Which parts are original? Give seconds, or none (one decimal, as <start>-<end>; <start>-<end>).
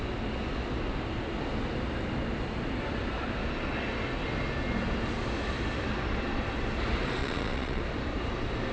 0.0-7.2; 7.8-8.7